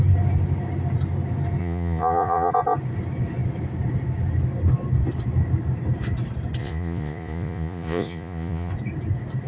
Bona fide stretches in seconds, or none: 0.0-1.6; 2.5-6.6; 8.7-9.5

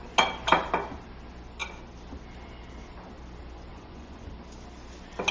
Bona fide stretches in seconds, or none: 0.0-3.7; 4.3-5.3

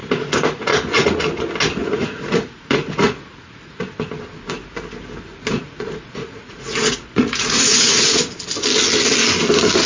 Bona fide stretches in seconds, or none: 1.2-1.8; 3.8-5.5; 8.2-9.9